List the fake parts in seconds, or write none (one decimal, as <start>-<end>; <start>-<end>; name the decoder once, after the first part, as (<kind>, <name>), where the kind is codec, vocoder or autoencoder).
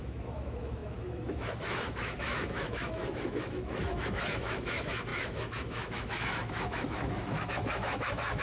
0.0-8.4 (autoencoder, DAC-VAE)